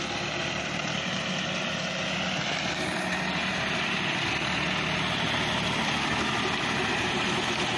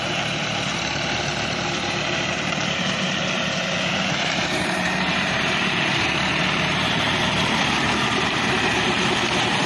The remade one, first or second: second